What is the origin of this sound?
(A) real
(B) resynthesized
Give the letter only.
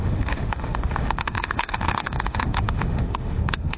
B